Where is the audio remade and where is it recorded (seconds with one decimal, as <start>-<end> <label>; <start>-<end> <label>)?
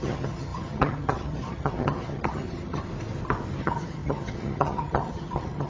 0.0-2.9 remade; 2.9-3.6 recorded; 3.6-5.7 remade